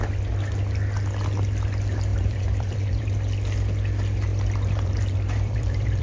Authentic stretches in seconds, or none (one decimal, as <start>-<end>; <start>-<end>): 0.0-2.1; 3.1-4.3